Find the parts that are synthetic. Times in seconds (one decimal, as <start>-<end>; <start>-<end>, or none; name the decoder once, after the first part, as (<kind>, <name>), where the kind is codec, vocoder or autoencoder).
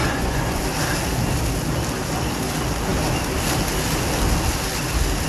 0.0-0.6 (vocoder, Vocos)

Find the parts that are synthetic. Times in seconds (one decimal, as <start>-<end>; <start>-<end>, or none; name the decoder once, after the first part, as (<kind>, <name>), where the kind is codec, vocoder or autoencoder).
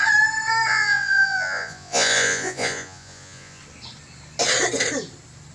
0.7-3.6 (vocoder, Vocos)